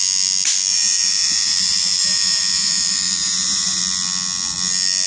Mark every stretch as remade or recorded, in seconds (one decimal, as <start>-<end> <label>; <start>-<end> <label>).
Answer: 0.0-0.7 recorded; 0.7-3.8 remade; 3.8-5.1 recorded